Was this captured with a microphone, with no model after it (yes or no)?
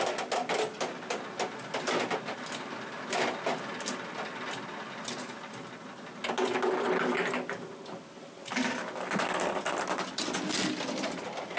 yes